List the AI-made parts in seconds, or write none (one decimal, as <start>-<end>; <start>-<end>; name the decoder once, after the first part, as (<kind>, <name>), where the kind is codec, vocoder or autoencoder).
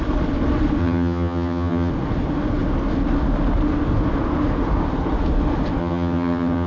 0.8-1.9 (vocoder, HiFi-GAN); 5.8-6.7